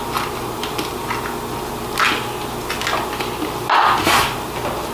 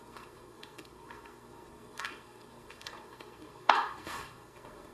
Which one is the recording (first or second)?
first